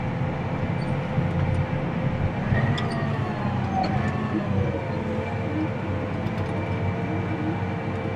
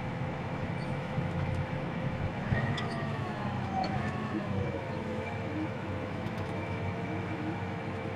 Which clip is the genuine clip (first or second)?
first